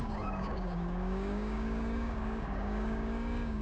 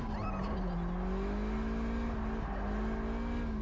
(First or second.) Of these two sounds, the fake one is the first